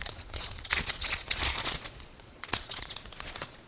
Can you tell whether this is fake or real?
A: fake